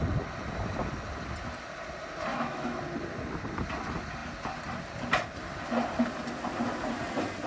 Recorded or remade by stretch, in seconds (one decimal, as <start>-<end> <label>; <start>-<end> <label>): 0.0-2.3 recorded; 2.3-2.8 remade; 2.8-7.5 recorded

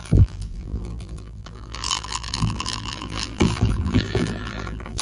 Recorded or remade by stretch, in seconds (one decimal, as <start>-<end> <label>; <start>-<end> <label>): 0.0-5.0 remade

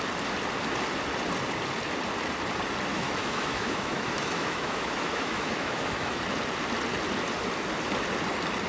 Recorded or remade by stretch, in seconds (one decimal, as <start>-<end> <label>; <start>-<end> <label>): 0.0-2.9 recorded; 2.9-6.2 remade; 6.2-8.7 recorded

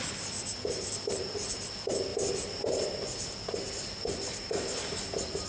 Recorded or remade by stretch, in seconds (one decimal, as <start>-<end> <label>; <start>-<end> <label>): 0.0-2.1 recorded; 2.1-2.9 remade; 2.9-5.5 recorded